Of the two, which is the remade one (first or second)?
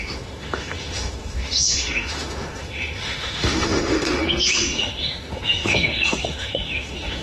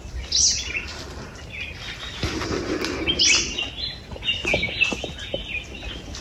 first